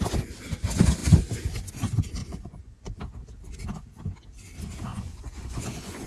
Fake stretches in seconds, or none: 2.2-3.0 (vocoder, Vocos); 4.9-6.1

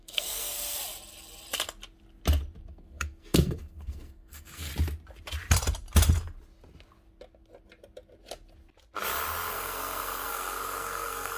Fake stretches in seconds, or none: 0.0-0.8 (codec, SNAC); 2.7-4.7; 9.5-11.4